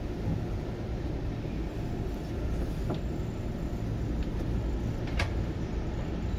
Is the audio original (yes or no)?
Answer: yes